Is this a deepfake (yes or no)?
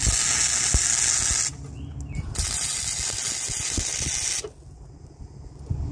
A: no